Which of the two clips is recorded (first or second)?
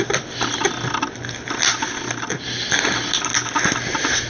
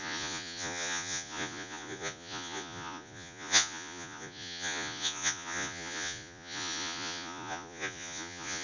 first